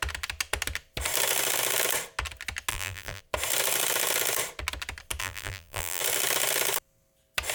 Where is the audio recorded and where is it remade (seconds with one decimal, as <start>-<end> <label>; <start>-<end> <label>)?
0.0-2.7 recorded; 2.7-3.2 remade; 3.2-5.2 recorded; 5.2-6.0 remade; 6.0-7.5 recorded